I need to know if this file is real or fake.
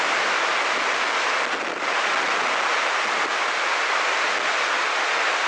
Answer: real